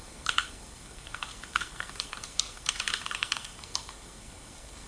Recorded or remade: remade